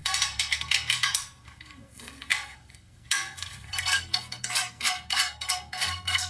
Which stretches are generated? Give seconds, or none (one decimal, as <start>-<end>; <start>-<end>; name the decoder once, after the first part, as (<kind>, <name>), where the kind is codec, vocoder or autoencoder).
0.0-6.3 (codec, SNAC)